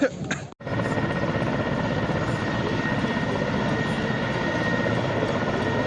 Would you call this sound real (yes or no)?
yes